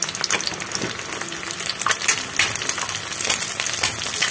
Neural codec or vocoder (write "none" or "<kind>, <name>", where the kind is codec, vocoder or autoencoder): none